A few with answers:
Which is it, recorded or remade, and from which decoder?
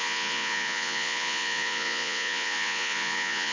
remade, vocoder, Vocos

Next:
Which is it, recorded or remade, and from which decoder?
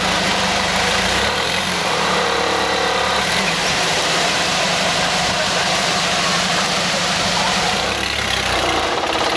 remade, vocoder, BigVGAN v2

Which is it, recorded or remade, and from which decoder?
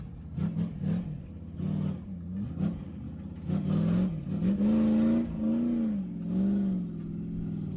recorded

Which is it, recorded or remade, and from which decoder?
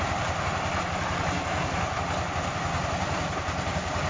recorded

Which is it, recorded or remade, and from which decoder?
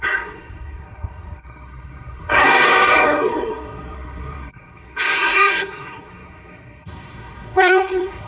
remade, codec, SNAC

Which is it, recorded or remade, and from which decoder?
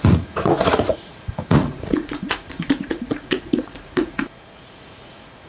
remade, vocoder, Vocos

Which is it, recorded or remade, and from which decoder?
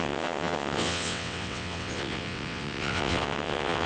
remade, vocoder, WaveNeXt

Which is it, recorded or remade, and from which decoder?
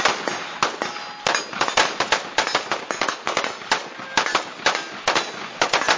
recorded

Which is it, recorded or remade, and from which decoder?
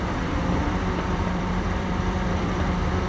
remade, vocoder, BigVGAN v2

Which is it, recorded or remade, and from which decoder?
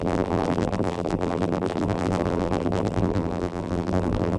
remade, vocoder, BigVGAN v2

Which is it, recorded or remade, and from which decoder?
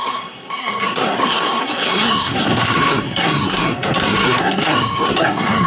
remade, codec, SNAC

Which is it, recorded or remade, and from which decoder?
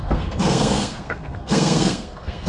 remade, codec, SNAC